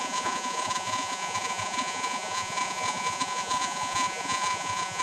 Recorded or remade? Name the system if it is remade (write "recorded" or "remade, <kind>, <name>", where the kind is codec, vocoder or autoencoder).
remade, vocoder, Vocos